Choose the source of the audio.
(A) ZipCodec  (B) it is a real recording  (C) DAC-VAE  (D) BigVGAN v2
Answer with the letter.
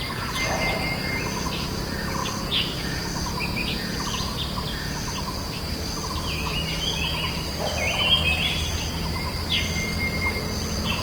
B